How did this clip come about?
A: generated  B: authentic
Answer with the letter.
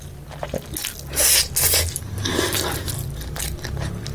B